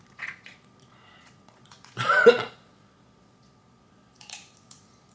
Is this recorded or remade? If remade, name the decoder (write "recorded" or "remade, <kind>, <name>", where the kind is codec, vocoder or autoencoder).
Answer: remade, vocoder, Vocos